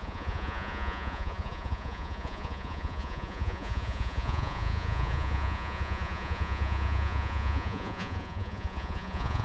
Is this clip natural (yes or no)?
no